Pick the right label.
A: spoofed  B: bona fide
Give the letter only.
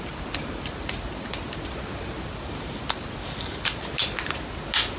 B